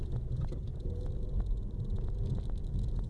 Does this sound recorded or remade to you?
recorded